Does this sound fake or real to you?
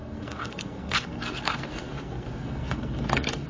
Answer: fake